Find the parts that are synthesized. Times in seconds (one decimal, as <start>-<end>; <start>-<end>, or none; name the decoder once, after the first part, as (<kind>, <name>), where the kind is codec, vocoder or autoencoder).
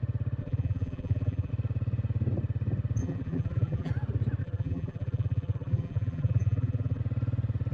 0.4-1.5 (vocoder, BigVGAN v2); 3.0-3.9; 4.4-7.0